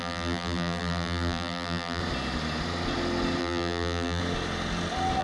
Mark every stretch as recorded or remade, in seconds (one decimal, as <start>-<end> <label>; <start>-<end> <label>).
0.0-2.0 remade; 2.0-3.4 recorded; 3.4-4.2 remade; 4.2-5.2 recorded